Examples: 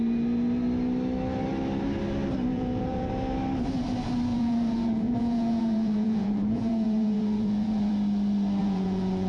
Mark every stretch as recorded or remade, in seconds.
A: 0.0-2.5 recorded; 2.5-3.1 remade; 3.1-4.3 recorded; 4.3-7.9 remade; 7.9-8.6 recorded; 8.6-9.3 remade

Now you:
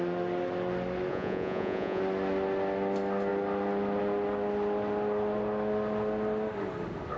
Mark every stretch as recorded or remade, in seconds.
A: 0.0-1.1 recorded; 1.1-2.0 remade; 2.0-7.2 recorded

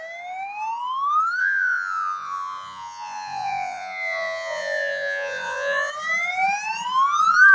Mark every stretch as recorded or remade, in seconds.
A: 0.0-1.4 recorded; 1.4-5.9 remade; 5.9-7.5 recorded

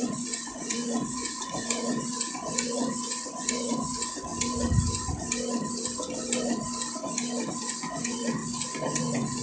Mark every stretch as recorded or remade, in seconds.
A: 0.0-4.3 remade; 4.3-7.6 recorded; 7.6-8.4 remade; 8.4-9.0 recorded; 9.0-9.4 remade

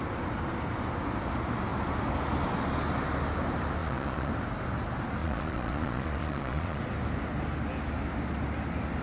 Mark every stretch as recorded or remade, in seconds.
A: 0.0-3.8 recorded; 3.8-4.3 remade; 4.3-5.2 recorded; 5.2-6.8 remade; 6.8-9.0 recorded

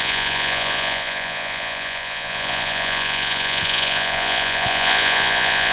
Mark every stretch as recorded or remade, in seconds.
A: 0.0-5.7 remade

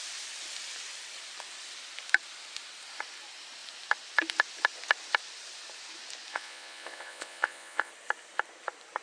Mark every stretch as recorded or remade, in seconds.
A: 0.0-6.3 recorded; 6.3-7.9 remade; 7.9-9.0 recorded

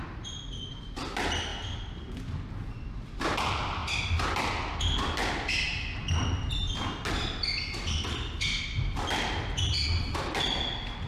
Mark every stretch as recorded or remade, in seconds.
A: 0.0-11.1 recorded